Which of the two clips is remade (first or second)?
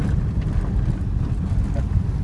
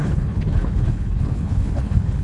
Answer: second